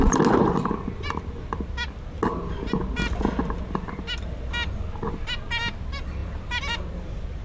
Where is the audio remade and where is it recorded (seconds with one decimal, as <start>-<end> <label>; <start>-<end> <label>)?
0.0-7.4 recorded